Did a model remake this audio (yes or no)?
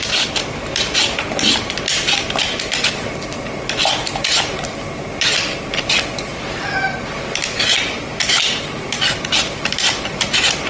no